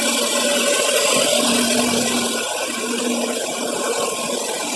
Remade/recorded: recorded